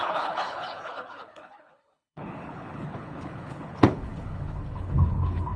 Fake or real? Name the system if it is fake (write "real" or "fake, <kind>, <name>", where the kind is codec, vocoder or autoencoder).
fake, codec, HILCodec